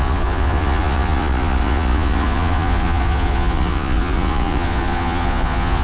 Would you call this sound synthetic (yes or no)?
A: yes